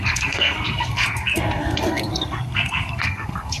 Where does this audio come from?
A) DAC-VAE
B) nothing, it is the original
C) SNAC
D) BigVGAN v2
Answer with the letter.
C